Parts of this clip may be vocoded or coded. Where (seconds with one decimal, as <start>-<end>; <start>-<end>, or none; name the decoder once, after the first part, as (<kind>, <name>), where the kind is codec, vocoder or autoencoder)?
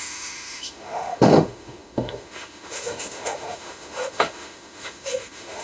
0.0-5.6 (autoencoder, DAC-VAE)